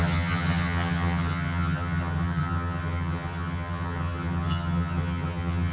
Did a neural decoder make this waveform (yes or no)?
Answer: yes